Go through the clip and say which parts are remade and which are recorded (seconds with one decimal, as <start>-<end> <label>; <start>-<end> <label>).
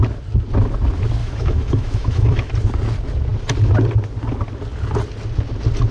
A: 0.0-1.2 recorded; 1.2-2.5 remade; 2.5-5.9 recorded